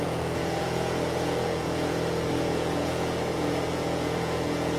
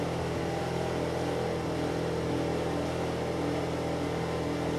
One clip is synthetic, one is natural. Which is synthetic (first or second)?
first